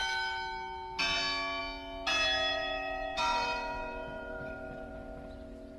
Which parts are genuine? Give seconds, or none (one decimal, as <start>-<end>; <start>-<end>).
0.0-2.5; 4.9-5.8